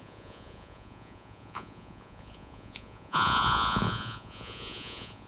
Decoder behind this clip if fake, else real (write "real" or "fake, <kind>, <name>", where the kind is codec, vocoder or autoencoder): fake, vocoder, Vocos